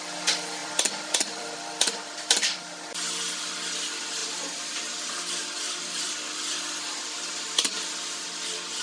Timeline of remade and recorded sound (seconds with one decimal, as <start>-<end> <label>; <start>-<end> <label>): 0.0-0.6 recorded; 0.6-2.6 remade; 2.6-8.8 recorded